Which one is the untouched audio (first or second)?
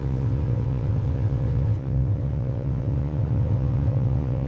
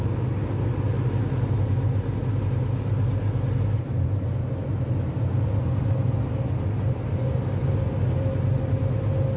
second